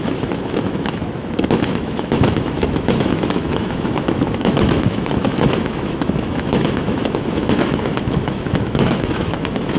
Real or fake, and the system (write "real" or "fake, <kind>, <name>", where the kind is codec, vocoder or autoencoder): fake, autoencoder, DAC-VAE